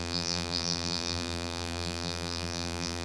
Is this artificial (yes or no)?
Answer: yes